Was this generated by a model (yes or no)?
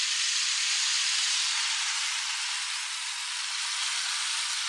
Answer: no